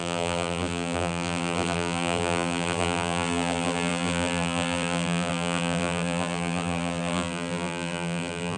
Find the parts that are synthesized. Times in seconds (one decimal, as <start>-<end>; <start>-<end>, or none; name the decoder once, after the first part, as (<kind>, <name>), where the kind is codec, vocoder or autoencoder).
0.0-8.6 (vocoder, BigVGAN v2)